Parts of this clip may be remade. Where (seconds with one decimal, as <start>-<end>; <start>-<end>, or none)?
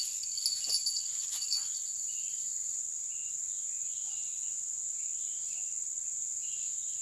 none